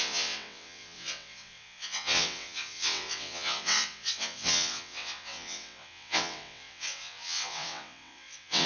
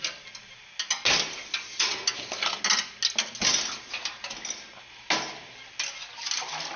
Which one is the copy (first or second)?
first